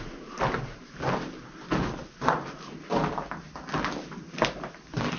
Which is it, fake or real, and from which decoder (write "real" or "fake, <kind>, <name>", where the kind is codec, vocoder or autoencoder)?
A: real